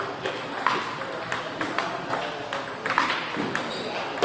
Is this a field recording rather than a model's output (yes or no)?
yes